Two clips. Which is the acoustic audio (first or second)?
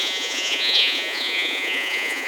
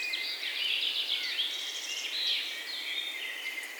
second